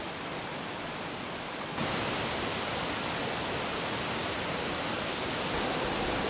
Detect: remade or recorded recorded